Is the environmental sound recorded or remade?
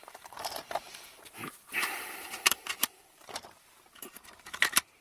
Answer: remade